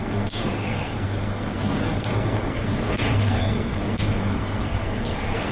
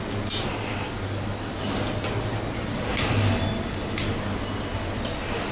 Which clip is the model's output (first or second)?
first